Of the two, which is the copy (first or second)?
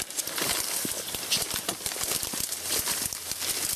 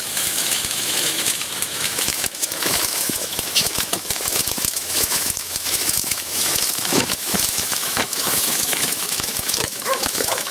second